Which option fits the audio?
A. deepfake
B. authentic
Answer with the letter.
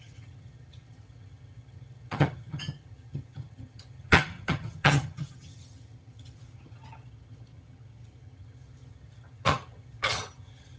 A